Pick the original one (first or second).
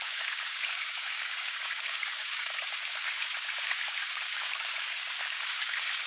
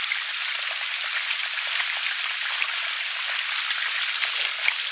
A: second